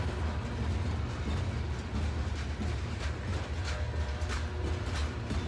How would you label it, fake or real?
real